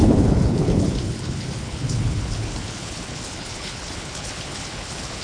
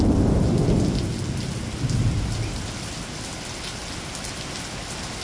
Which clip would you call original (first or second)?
second